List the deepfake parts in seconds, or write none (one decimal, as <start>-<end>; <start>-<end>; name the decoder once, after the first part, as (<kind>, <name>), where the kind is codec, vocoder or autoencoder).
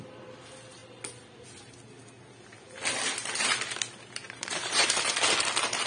4.2-5.1 (vocoder, BigVGAN v2)